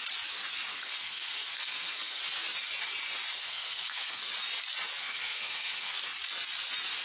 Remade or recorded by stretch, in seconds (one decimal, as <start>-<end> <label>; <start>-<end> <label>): 0.0-0.7 recorded; 0.7-2.2 remade; 2.2-3.3 recorded; 3.3-4.3 remade; 4.3-5.0 recorded; 5.0-5.9 remade; 5.9-7.0 recorded

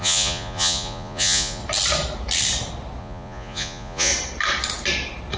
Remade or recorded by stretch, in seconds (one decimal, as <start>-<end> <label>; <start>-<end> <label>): 0.0-1.6 remade; 1.6-3.0 recorded; 3.0-4.1 remade; 4.1-5.4 recorded

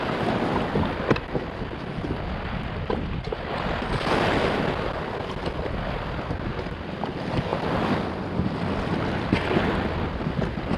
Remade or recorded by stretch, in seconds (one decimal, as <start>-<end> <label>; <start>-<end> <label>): 0.0-10.8 recorded